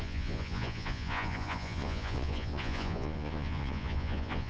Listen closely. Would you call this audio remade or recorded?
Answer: remade